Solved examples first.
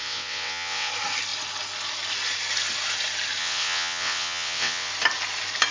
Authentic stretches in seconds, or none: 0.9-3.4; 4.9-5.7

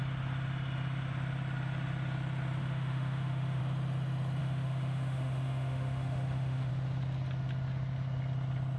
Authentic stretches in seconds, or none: 0.0-2.6; 3.6-4.4; 6.7-8.8

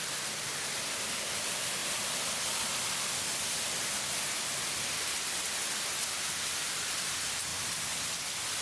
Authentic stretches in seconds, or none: 0.0-8.6

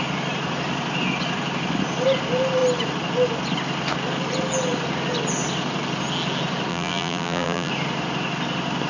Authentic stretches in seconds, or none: 0.0-6.7; 7.7-8.9

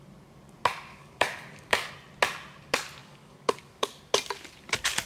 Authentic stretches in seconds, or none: 0.0-0.9; 1.9-3.0; 4.0-5.1